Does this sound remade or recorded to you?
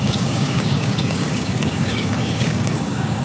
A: remade